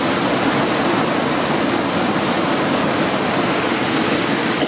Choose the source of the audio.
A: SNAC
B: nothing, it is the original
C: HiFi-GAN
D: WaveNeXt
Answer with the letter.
B